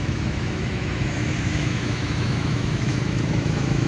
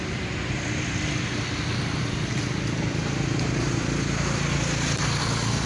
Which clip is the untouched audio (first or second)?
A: second